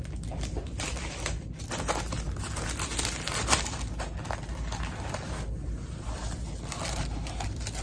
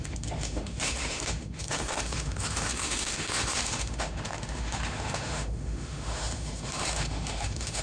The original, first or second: first